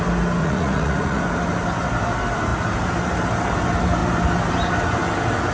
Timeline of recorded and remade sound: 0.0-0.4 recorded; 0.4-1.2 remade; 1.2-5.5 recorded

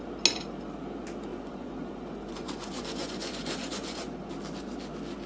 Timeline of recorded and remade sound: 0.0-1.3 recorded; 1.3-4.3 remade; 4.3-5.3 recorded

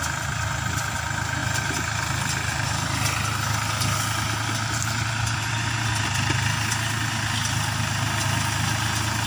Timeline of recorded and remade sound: 0.0-9.3 recorded

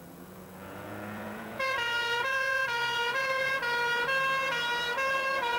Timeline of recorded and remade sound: 0.0-3.6 remade; 3.6-5.1 recorded; 5.1-5.6 remade

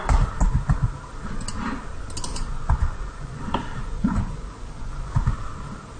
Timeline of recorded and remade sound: 0.0-2.3 recorded; 2.3-3.4 remade; 3.4-3.8 recorded; 3.8-5.1 remade; 5.1-6.0 recorded

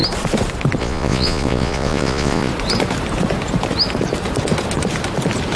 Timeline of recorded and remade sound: 0.0-0.8 recorded; 0.8-2.5 remade; 2.5-5.6 recorded

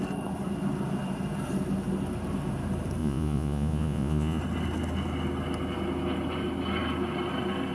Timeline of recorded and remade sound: 0.0-3.0 recorded; 3.0-4.4 remade; 4.4-7.7 recorded